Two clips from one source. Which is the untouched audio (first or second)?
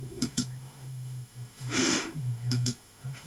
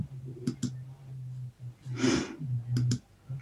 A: second